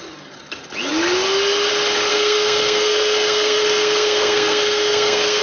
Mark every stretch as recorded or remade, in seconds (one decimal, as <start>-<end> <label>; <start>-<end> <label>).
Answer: 0.0-2.1 recorded; 2.1-5.4 remade